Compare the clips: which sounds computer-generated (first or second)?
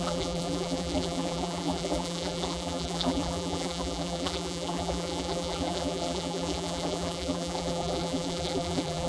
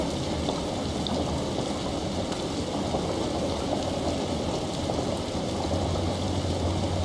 first